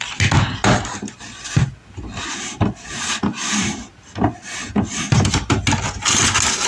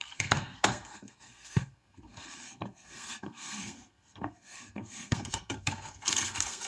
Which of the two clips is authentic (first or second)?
first